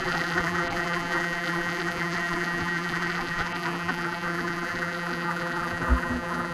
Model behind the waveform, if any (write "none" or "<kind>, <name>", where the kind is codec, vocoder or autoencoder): vocoder, BigVGAN v2